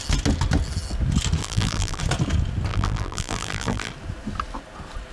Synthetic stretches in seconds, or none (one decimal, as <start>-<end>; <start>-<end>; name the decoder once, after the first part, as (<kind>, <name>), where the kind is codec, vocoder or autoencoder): 1.4-2.0 (vocoder, BigVGAN v2); 2.7-3.9

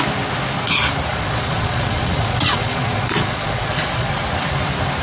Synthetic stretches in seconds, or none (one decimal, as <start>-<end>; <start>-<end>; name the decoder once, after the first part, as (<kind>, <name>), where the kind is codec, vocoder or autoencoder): 1.1-4.1 (vocoder, Vocos)